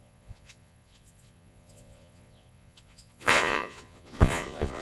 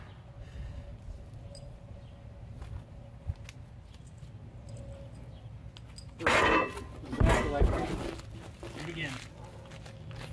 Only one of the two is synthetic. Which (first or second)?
first